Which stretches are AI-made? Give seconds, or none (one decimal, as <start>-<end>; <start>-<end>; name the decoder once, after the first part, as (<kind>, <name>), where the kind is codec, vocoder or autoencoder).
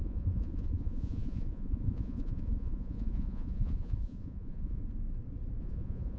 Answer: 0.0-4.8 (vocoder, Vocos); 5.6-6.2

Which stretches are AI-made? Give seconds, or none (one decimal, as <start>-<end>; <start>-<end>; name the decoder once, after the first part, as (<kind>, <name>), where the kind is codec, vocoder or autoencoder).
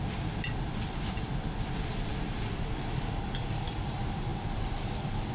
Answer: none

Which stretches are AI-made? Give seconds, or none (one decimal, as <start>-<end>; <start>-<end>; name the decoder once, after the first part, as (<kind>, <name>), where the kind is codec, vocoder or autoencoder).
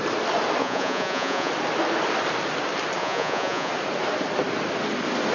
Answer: 0.6-1.5 (vocoder, Vocos); 3.0-3.7